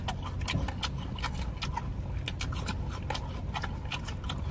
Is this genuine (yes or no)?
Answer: yes